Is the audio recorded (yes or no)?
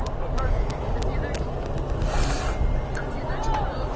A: yes